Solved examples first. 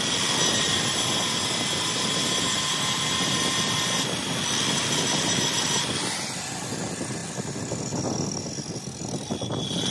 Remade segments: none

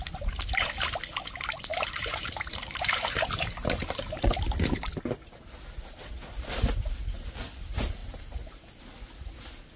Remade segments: 1.7-4.9 (vocoder, BigVGAN v2); 8.0-8.8

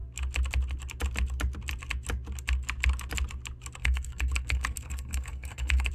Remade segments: 3.8-5.9 (codec, SNAC)

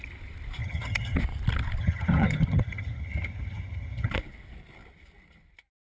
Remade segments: 0.6-1.2 (vocoder, HiFi-GAN); 1.8-4.1

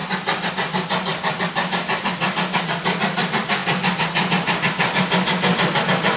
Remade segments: 0.0-3.6 (vocoder, BigVGAN v2); 5.8-6.2

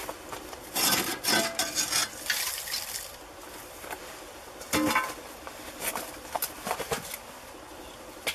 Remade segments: none

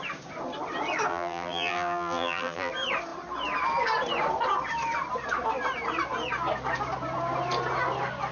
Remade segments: 1.1-2.7 (vocoder, BigVGAN v2)

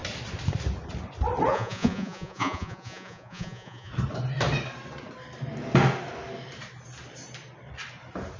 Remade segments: 1.5-3.9 (vocoder, Vocos)